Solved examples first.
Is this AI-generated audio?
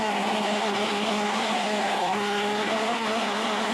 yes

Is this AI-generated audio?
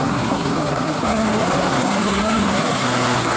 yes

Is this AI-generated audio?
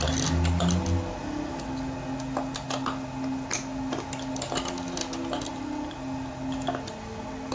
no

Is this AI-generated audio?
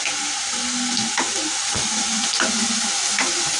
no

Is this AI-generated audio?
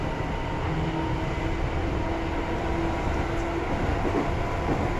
no